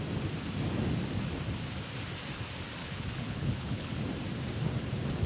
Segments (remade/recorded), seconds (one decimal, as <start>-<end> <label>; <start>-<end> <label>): 0.0-2.8 recorded; 2.8-3.9 remade; 3.9-5.3 recorded